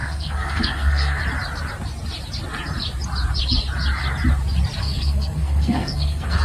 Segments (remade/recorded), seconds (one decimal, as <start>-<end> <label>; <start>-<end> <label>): 0.0-1.2 remade; 1.2-4.8 recorded; 4.8-6.4 remade